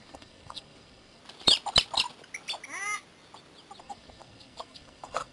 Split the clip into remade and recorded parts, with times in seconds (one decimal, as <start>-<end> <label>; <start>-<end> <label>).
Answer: 0.0-1.2 remade; 1.2-3.8 recorded; 3.8-5.3 remade